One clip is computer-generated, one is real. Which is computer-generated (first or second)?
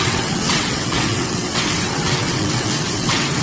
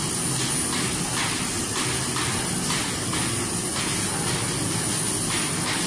first